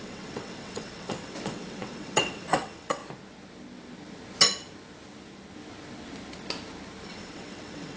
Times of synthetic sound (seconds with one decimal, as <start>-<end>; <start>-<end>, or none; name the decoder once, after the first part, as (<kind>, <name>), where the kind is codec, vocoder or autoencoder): 0.0-3.0 (vocoder, WaveNeXt); 7.1-8.0